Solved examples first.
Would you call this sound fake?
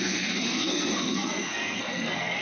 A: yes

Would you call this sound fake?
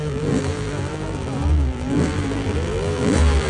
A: yes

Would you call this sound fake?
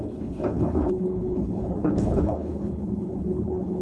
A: yes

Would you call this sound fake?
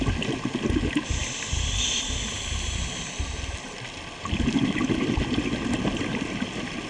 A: no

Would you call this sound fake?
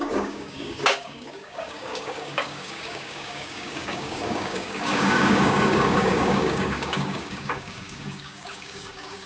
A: yes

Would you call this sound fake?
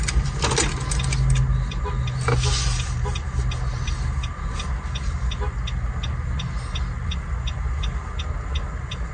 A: no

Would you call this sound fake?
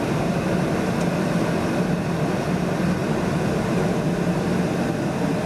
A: no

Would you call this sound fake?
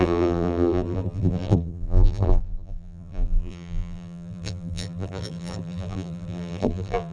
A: yes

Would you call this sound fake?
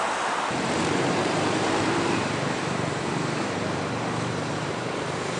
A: yes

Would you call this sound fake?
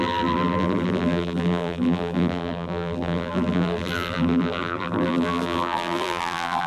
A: yes